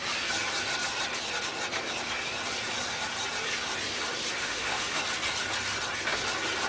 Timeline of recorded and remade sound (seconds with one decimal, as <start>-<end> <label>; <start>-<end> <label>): 0.0-4.4 recorded; 4.4-5.0 remade; 5.0-6.7 recorded